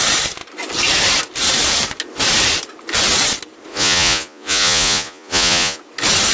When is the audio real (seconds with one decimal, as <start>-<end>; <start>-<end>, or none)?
0.0-3.7; 5.8-6.3